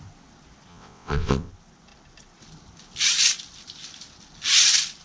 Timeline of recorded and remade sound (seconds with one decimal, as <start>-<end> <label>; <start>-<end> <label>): 0.0-0.7 recorded; 0.7-1.5 remade; 1.5-5.0 recorded